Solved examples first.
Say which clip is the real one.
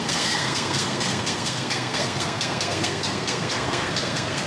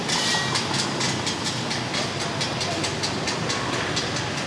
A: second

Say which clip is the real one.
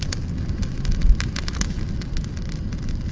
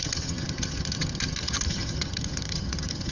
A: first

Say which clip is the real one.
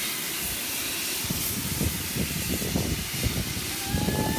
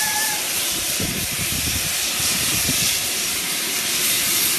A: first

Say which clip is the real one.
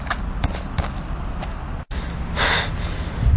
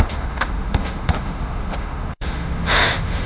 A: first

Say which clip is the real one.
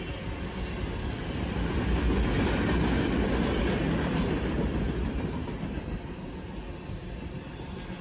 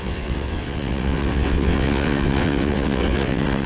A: first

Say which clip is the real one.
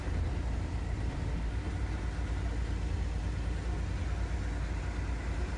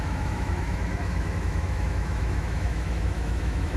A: first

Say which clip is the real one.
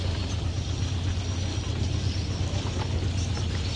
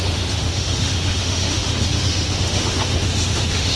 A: first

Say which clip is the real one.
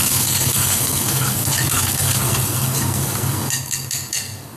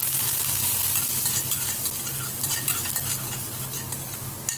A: second